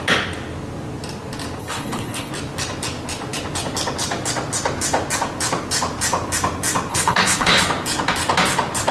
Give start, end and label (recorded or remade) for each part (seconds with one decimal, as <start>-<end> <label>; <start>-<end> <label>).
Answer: 0.0-1.6 recorded; 1.6-2.3 remade; 2.3-6.9 recorded; 6.9-7.6 remade; 7.6-8.9 recorded